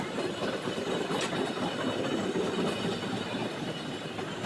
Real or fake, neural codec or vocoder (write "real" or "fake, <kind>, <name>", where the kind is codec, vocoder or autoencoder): fake, vocoder, BigVGAN v2